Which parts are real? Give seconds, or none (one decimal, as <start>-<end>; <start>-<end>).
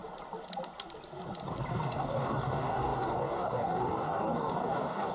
0.0-1.7